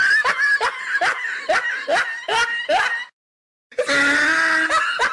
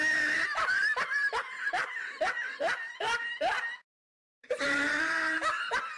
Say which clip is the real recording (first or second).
first